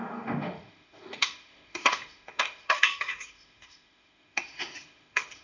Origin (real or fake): fake